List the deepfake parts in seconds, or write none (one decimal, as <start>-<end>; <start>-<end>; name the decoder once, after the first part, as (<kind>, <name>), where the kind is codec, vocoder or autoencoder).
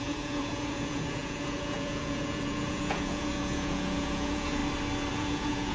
0.0-4.6 (vocoder, Vocos); 5.1-5.7